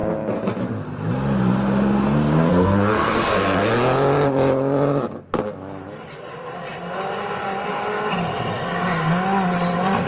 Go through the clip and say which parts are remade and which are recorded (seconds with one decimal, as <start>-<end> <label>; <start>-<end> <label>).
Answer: 0.0-2.5 recorded; 2.5-3.7 remade; 3.7-10.1 recorded